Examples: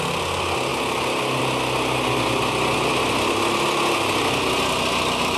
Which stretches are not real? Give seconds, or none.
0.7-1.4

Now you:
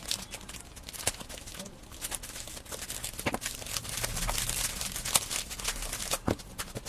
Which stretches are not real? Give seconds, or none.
none

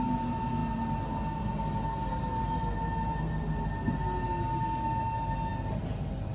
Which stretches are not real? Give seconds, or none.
none

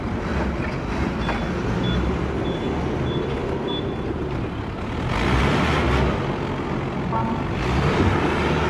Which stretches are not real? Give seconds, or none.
none

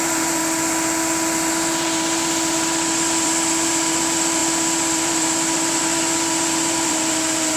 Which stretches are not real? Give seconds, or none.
0.0-0.4; 1.5-7.6

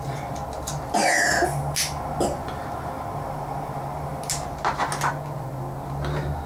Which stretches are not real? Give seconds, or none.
none

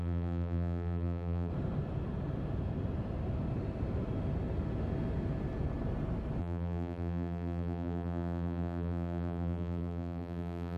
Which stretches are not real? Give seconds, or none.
0.0-1.5; 6.4-10.8

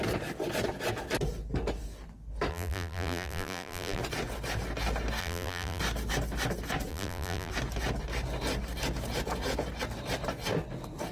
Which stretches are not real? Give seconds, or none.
2.5-4.0; 5.2-5.8; 6.9-7.5